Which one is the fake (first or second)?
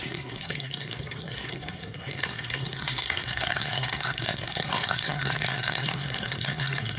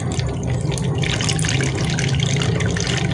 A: first